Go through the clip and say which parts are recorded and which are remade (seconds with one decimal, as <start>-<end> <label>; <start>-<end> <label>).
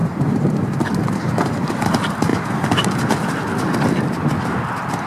0.0-5.1 recorded